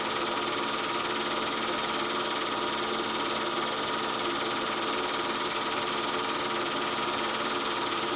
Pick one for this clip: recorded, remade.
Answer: recorded